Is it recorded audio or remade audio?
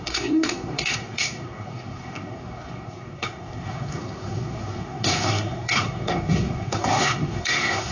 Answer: remade